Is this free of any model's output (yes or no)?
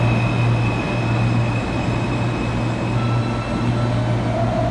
yes